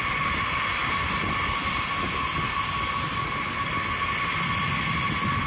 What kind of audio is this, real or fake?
real